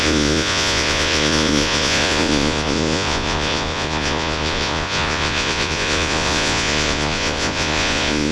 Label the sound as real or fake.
fake